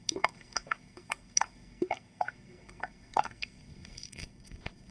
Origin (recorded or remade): remade